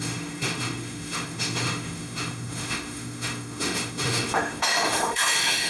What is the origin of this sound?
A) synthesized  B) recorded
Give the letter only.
A